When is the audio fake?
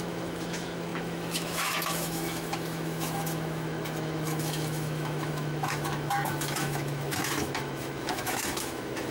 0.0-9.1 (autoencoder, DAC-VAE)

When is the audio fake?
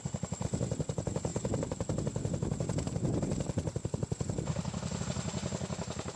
none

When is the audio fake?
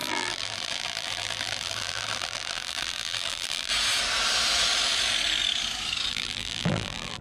0.0-3.7 (vocoder, BigVGAN v2); 6.1-7.2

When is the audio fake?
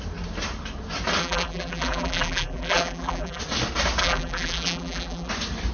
1.2-3.4 (vocoder, BigVGAN v2); 4.0-5.3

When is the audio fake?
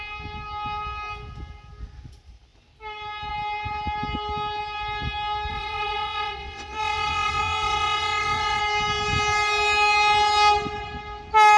5.5-8.6 (vocoder, WaveNeXt)